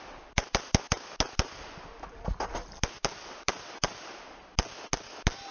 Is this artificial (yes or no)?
no